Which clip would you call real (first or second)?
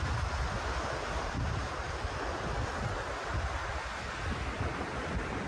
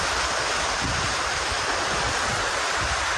first